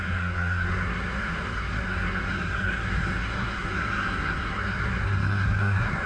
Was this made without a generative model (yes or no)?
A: no